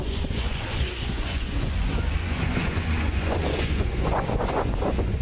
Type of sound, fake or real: fake